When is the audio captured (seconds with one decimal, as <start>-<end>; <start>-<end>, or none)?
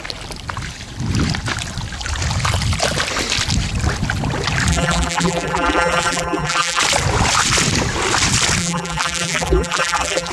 0.0-4.7; 6.8-8.6